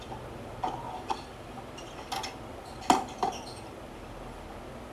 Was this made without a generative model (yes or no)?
yes